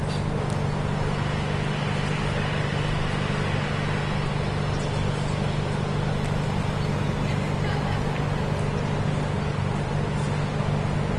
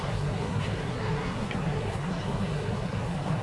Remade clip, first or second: second